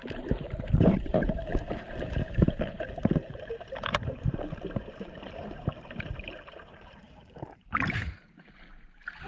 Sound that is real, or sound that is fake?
fake